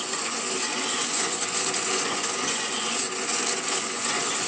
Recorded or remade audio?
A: remade